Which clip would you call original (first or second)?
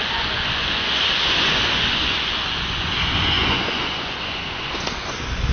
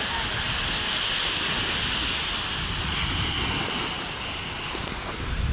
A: second